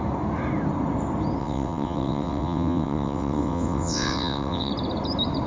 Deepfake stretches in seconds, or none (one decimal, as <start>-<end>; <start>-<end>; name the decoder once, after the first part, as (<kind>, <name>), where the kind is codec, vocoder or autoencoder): 1.4-4.7 (vocoder, WaveNeXt)